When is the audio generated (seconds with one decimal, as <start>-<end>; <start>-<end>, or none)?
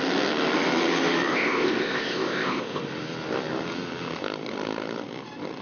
1.3-2.8